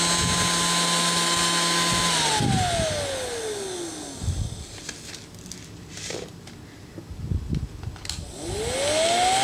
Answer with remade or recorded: recorded